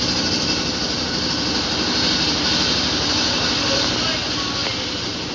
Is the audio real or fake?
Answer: real